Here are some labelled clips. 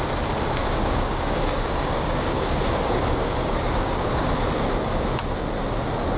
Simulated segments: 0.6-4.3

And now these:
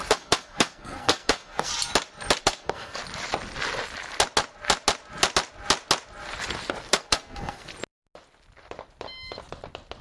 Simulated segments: 0.0-1.7; 2.4-3.0; 6.9-7.7